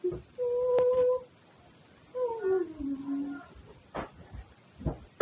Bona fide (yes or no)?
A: yes